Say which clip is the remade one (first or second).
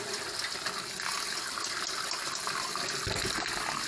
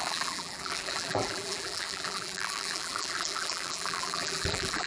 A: second